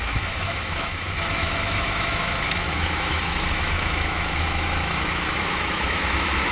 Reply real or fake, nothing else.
fake